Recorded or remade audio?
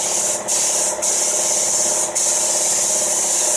recorded